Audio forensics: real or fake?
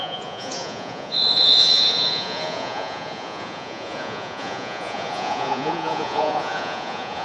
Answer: fake